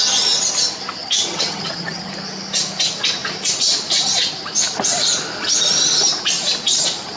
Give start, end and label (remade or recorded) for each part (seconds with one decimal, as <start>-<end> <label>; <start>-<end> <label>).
0.0-1.0 recorded; 1.0-2.1 remade; 2.1-7.2 recorded